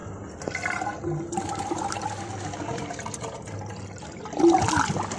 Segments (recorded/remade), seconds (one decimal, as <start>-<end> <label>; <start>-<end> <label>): 0.0-5.2 recorded